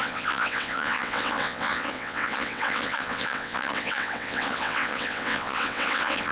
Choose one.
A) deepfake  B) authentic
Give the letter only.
A